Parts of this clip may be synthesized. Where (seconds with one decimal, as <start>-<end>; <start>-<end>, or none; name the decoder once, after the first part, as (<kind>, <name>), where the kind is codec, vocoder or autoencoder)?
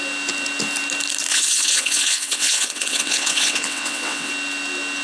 1.3-4.3 (vocoder, WaveNeXt)